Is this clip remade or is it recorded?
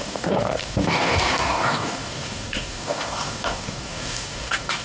remade